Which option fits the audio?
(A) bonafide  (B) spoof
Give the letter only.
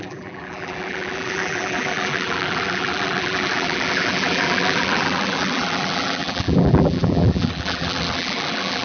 B